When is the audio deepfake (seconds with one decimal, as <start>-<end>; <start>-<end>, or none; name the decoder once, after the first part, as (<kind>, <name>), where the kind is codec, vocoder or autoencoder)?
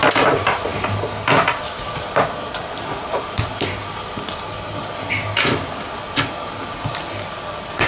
none